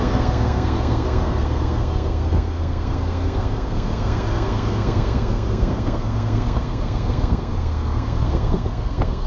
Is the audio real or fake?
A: fake